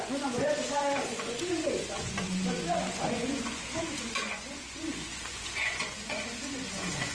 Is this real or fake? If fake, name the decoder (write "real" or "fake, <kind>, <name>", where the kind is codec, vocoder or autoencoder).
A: fake, vocoder, Vocos